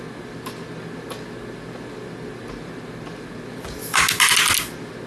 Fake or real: real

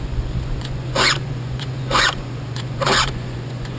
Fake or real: fake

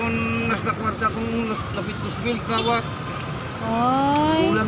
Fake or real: real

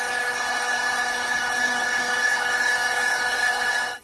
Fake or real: fake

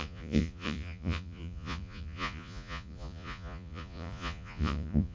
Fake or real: fake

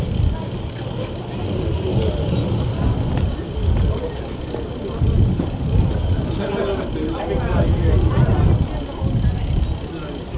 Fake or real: real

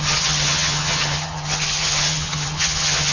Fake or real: fake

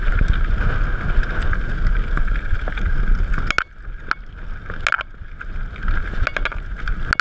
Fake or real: real